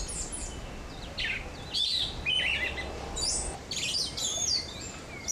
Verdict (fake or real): real